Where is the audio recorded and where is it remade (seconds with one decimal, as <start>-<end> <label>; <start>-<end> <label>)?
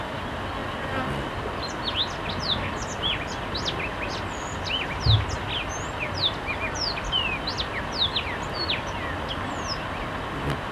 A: 0.0-10.7 recorded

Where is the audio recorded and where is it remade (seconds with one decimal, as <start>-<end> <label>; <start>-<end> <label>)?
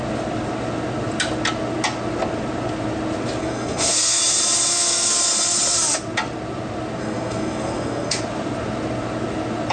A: 0.0-3.4 recorded; 3.4-4.2 remade; 4.2-4.7 recorded; 4.7-5.2 remade; 5.2-7.0 recorded; 7.0-8.2 remade; 8.2-9.7 recorded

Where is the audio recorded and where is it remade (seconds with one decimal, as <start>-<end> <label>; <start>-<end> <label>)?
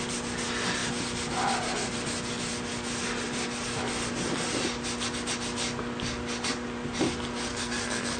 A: 0.0-7.5 recorded; 7.5-8.2 remade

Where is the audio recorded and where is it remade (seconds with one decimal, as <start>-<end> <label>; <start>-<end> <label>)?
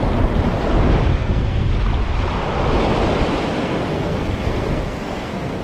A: 0.0-1.1 recorded; 1.1-1.7 remade; 1.7-3.6 recorded; 3.6-5.6 remade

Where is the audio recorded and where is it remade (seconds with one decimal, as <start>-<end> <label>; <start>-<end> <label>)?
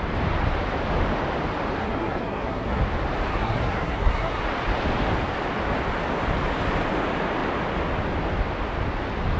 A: 0.0-1.8 recorded; 1.8-2.8 remade; 2.8-3.3 recorded; 3.3-4.4 remade; 4.4-9.4 recorded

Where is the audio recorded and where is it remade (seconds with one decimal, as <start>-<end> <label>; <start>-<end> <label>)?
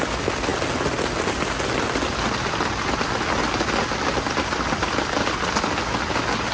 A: 0.0-6.5 recorded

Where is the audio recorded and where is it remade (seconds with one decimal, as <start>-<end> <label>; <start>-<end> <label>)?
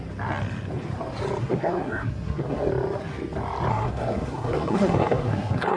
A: 0.0-1.4 recorded; 1.4-2.7 remade; 2.7-3.7 recorded; 3.7-5.8 remade